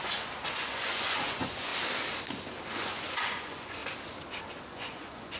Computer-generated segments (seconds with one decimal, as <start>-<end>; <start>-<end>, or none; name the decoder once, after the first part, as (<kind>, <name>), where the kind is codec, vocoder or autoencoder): 0.0-1.7 (vocoder, Vocos); 2.7-3.8; 4.7-5.4